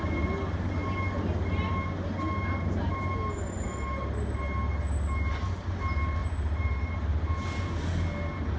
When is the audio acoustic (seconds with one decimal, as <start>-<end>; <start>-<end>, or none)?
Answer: 0.0-6.2; 6.9-8.6